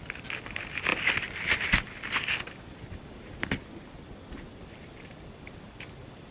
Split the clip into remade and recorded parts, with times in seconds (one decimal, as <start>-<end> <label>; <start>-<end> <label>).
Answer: 0.0-6.3 recorded